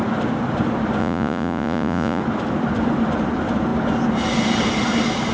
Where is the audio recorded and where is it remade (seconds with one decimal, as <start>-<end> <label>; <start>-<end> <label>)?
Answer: 0.0-1.0 recorded; 1.0-2.2 remade; 2.2-5.3 recorded